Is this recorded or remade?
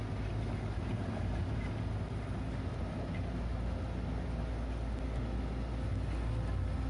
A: recorded